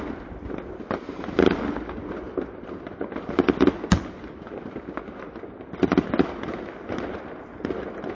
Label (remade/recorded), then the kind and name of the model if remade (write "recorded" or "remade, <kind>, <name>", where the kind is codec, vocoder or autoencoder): recorded